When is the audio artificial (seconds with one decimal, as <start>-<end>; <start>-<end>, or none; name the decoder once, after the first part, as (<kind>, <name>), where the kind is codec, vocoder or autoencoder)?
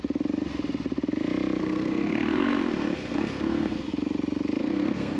1.6-3.9 (codec, SNAC); 4.6-5.2